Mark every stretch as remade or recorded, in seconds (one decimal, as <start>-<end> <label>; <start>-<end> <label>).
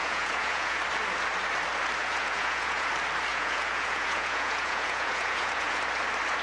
0.0-0.8 remade; 0.8-2.0 recorded; 2.0-2.9 remade; 2.9-3.3 recorded; 3.3-5.8 remade; 5.8-6.4 recorded